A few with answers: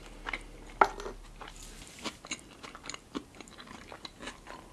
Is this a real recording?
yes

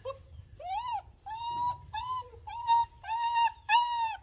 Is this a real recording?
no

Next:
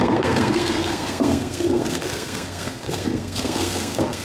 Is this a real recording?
no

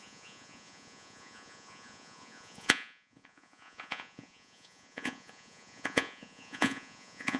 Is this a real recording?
no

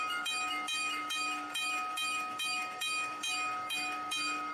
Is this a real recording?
no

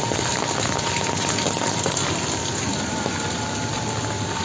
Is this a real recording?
yes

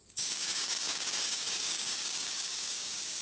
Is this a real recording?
no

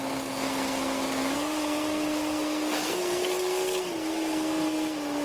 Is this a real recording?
no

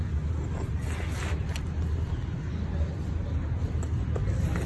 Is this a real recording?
yes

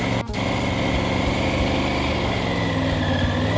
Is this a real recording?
yes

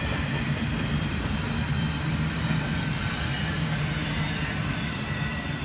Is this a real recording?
no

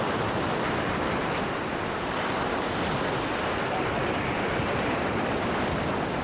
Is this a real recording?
no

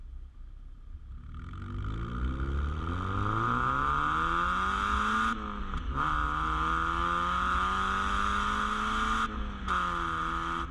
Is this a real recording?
yes